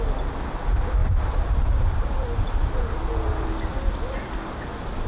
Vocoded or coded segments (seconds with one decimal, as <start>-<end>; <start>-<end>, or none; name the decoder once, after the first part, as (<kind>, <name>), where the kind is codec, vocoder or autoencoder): 1.0-2.4 (vocoder, BigVGAN v2)